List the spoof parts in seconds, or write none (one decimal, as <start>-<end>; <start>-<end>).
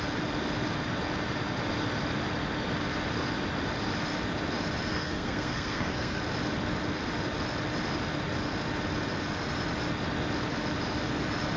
4.9-6.2